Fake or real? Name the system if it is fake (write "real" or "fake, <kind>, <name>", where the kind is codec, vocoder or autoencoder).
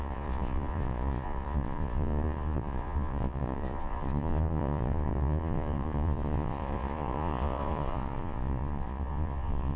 fake, vocoder, Vocos